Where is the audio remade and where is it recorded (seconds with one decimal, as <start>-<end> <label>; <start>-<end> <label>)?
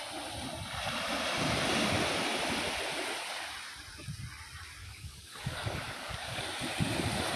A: 0.0-4.8 recorded; 4.8-6.4 remade; 6.4-7.4 recorded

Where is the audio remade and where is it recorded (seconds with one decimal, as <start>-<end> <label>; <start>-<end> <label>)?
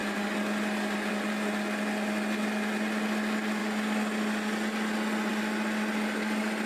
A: 0.0-6.7 recorded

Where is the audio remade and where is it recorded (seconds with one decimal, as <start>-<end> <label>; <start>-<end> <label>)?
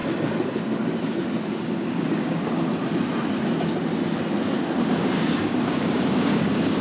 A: 0.0-1.5 recorded; 1.5-2.7 remade; 2.7-4.8 recorded; 4.8-6.8 remade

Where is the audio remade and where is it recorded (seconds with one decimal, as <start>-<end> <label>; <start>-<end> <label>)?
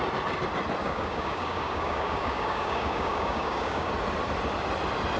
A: 0.0-0.8 recorded; 0.8-3.9 remade; 3.9-5.2 recorded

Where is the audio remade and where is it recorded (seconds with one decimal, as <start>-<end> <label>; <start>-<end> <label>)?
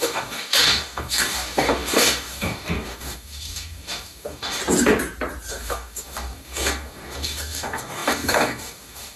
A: 0.0-4.6 remade; 4.6-5.5 recorded; 5.5-9.2 remade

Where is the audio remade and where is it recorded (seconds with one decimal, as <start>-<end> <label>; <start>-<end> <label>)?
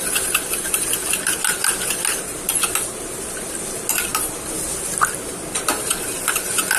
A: 0.0-6.8 recorded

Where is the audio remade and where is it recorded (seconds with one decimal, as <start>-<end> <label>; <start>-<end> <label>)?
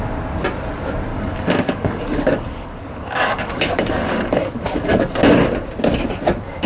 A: 0.0-1.1 recorded; 1.1-5.1 remade; 5.1-6.7 recorded